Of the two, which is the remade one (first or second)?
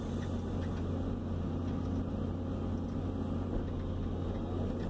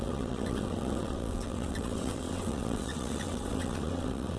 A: second